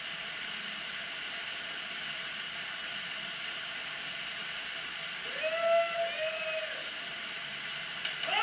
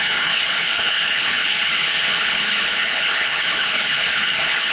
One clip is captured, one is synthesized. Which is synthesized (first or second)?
second